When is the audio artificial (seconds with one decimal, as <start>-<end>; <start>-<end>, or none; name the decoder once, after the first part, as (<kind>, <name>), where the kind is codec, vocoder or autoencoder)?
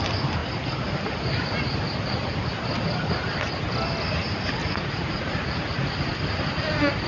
4.6-6.1 (vocoder, Vocos)